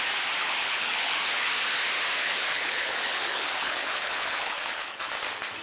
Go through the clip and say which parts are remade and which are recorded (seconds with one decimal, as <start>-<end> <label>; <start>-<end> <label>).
0.0-0.4 recorded; 0.4-1.5 remade; 1.5-2.2 recorded; 2.2-5.1 remade; 5.1-5.6 recorded